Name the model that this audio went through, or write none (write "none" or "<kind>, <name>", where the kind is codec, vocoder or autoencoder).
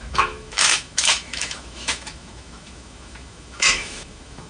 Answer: autoencoder, DAC-VAE